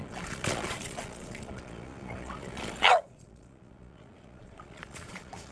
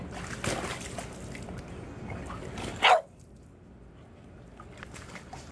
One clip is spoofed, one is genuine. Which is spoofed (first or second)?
first